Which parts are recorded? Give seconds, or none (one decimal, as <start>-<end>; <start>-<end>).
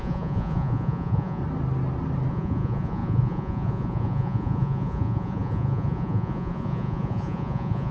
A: 1.4-2.3